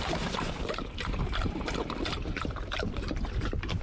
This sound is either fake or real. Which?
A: real